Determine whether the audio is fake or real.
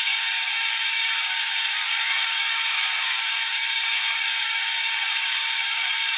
fake